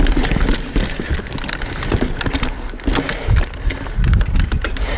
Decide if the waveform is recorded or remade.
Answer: recorded